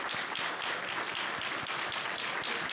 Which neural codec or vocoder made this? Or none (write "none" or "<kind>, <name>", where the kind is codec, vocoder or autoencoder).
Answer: none